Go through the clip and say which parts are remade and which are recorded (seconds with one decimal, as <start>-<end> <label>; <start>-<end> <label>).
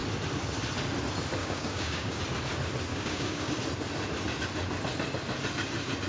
0.0-1.4 recorded; 1.4-2.2 remade; 2.2-2.9 recorded; 2.9-3.5 remade; 3.5-6.1 recorded